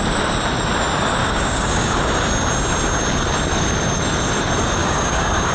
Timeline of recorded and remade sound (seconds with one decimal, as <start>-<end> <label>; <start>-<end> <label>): 0.0-1.2 recorded; 1.2-2.0 remade; 2.0-4.8 recorded; 4.8-5.5 remade